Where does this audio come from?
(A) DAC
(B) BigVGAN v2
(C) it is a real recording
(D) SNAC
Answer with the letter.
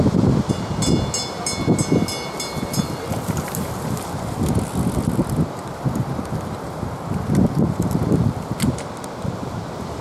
C